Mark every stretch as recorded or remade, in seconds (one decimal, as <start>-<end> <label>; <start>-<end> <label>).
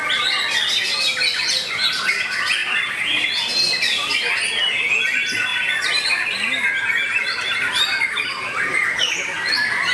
0.0-1.3 recorded; 1.3-1.9 remade; 1.9-9.9 recorded